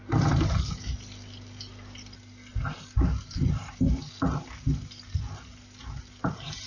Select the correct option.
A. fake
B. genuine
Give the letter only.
B